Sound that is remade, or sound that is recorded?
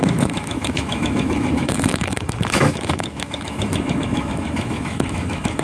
remade